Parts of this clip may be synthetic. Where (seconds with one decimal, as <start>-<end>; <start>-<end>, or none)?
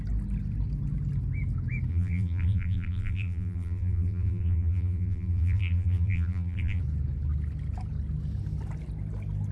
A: 1.9-6.8